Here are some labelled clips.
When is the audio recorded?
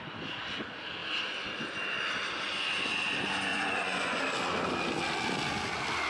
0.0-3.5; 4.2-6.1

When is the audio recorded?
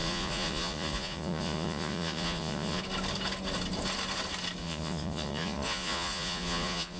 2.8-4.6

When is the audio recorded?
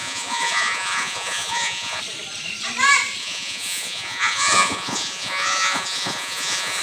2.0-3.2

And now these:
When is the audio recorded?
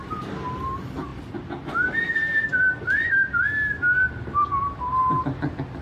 0.0-5.8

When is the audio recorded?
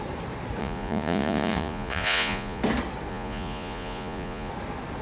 0.0-0.6; 2.6-3.1; 4.5-5.0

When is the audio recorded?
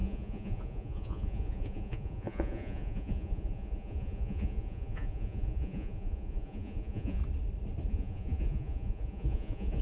7.2-7.9